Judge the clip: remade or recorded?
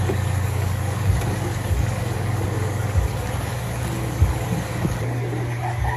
remade